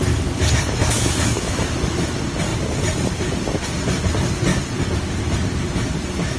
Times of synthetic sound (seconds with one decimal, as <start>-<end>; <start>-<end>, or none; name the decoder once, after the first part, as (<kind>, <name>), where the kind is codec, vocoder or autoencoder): 0.8-1.6 (autoencoder, DAC-VAE)